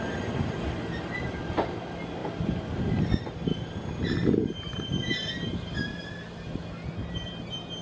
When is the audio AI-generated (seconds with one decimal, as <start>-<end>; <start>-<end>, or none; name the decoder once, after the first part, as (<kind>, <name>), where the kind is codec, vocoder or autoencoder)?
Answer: none